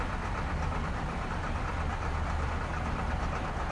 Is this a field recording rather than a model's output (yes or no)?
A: no